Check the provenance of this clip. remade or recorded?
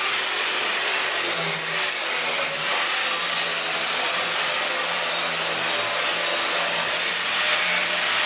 recorded